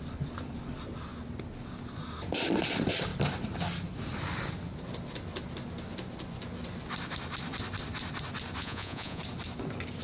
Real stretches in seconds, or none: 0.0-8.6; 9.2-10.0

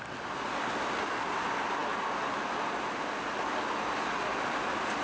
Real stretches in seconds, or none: 0.0-5.0